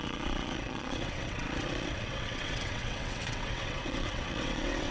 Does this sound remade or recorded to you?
remade